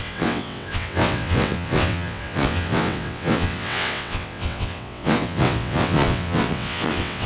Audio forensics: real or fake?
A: fake